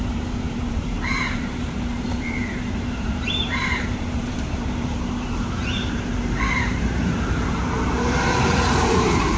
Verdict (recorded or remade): remade